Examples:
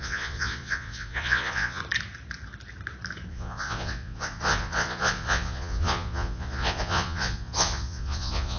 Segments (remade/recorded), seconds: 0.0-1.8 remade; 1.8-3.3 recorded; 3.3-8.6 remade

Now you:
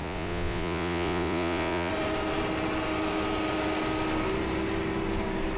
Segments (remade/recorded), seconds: 0.0-1.9 remade; 1.9-5.6 recorded

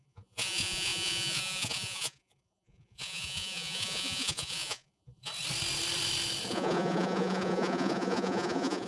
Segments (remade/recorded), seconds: 0.0-5.3 remade; 5.3-6.5 recorded; 6.5-8.9 remade

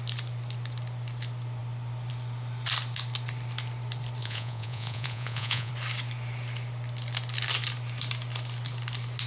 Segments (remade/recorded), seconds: 0.0-4.2 recorded; 4.2-5.7 remade; 5.7-9.3 recorded

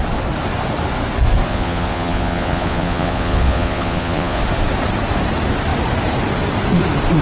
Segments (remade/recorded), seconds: 0.0-1.5 recorded; 1.5-4.4 remade; 4.4-7.2 recorded

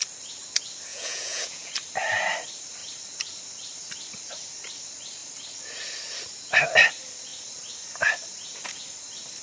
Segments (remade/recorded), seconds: 0.0-0.9 recorded; 0.9-1.7 remade; 1.7-9.4 recorded

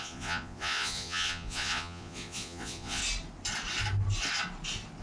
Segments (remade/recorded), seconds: 0.0-3.0 remade; 3.0-5.0 recorded

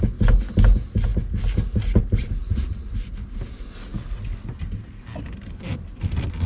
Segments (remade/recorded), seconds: 0.0-2.4 recorded; 2.4-2.9 remade; 2.9-6.5 recorded